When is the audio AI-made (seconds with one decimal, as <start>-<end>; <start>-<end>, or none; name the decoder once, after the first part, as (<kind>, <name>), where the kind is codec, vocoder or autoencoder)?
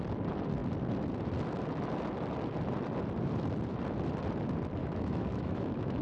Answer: 4.8-6.0 (autoencoder, DAC-VAE)